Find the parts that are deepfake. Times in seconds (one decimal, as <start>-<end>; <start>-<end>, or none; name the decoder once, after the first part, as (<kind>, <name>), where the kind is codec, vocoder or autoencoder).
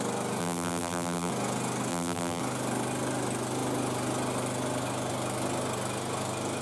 0.4-1.3 (vocoder, BigVGAN v2); 1.9-2.4